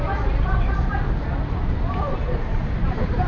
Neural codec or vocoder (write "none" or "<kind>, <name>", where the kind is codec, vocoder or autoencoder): vocoder, BigVGAN v2